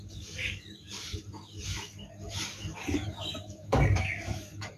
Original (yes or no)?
no